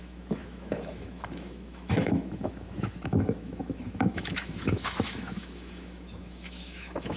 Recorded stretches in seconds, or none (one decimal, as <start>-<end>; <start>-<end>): none